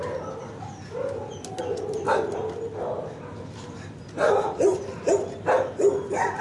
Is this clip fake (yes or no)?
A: no